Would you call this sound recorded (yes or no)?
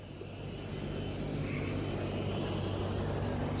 yes